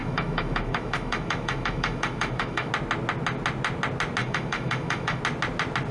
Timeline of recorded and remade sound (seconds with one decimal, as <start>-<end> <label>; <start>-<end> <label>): 0.0-2.7 remade; 2.7-4.2 recorded; 4.2-5.2 remade; 5.2-5.9 recorded